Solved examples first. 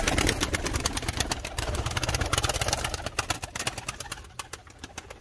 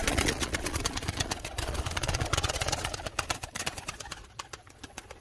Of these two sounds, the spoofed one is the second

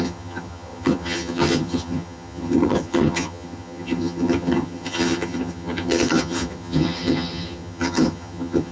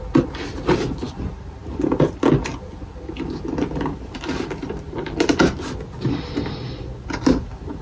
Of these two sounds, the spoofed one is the first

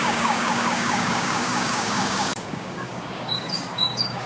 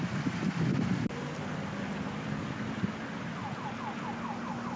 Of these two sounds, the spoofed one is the first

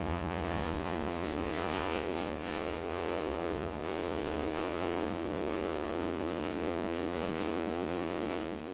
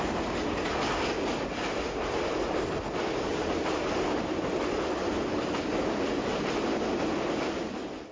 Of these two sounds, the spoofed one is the first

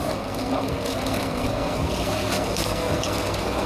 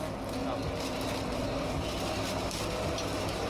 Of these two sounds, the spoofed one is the first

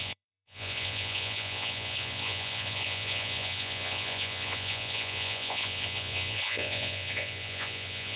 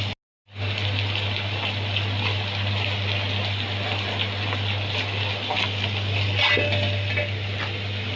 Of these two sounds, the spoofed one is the first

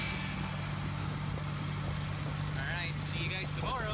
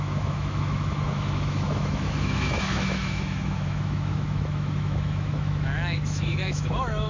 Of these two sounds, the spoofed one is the second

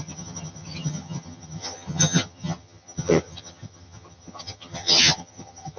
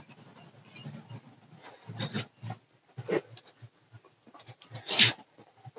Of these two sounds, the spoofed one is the first